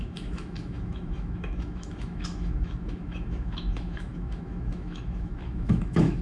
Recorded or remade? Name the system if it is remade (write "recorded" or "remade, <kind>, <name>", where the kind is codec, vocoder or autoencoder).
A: remade, autoencoder, DAC-VAE